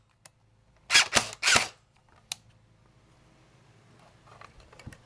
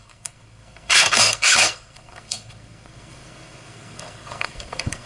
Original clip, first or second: first